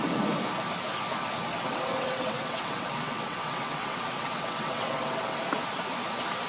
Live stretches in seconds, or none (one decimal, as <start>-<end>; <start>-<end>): 0.0-1.5; 5.4-6.5